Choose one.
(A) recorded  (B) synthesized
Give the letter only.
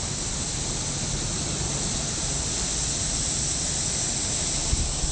A